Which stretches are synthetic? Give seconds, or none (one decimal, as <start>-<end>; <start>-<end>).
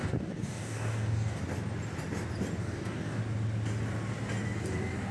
0.0-1.4; 2.6-3.2